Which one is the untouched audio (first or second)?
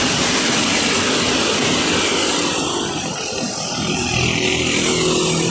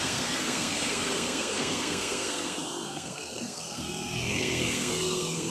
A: first